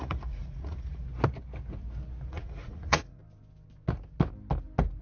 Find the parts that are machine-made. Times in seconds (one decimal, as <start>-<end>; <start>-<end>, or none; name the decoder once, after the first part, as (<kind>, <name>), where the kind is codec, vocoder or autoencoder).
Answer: 0.0-1.0 (vocoder, Vocos); 2.3-3.2